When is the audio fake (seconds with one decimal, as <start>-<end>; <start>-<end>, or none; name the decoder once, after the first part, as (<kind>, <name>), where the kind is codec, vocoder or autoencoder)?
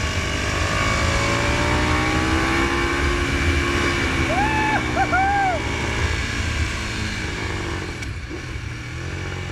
6.2-7.7 (vocoder, BigVGAN v2); 8.1-8.7